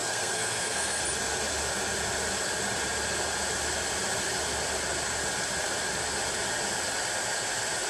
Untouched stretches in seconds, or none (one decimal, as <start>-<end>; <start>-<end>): 1.0-7.9